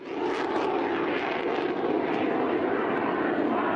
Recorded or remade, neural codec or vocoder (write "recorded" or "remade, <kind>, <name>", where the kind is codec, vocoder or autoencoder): recorded